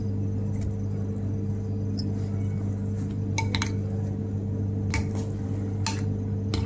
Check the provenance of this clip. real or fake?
real